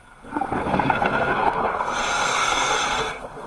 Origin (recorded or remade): remade